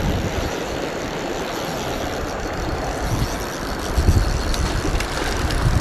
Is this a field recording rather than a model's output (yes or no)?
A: no